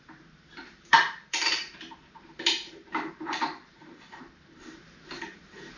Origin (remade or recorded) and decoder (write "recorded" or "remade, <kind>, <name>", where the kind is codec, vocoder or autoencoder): remade, vocoder, BigVGAN v2